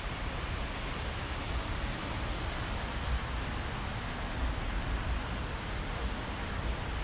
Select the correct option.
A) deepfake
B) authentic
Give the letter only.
B